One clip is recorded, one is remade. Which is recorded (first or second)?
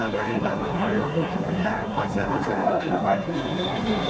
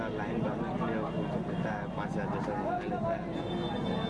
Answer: second